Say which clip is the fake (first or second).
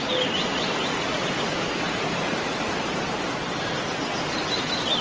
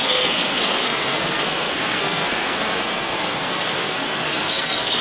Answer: second